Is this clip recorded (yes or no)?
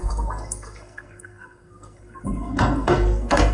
no